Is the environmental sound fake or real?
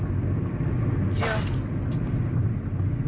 real